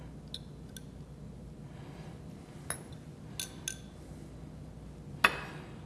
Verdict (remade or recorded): recorded